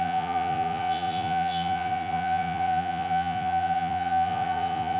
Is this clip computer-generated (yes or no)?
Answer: yes